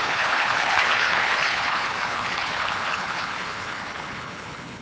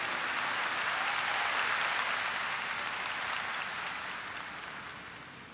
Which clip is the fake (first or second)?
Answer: first